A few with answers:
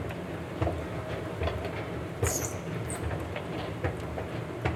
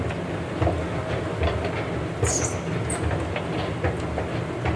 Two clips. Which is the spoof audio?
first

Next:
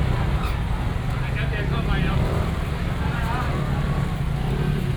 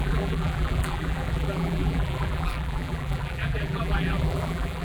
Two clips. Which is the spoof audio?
second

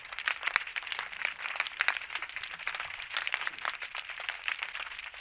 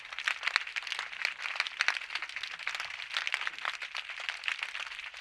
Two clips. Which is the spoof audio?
first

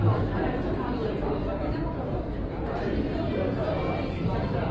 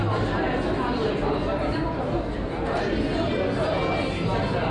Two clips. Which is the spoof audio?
first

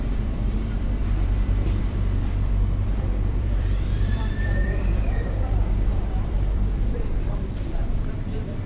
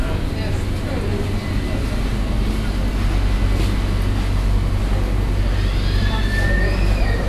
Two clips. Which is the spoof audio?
first